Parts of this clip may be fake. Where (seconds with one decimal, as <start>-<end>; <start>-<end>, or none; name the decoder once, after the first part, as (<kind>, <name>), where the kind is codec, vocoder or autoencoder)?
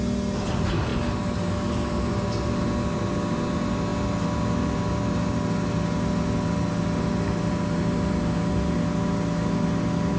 none